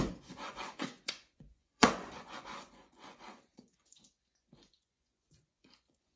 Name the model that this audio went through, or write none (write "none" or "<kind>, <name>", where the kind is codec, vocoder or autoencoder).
vocoder, Vocos